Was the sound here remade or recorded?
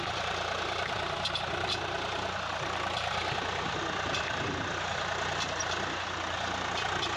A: recorded